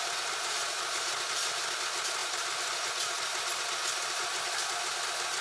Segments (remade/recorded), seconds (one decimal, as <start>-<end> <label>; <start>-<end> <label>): 0.0-5.4 recorded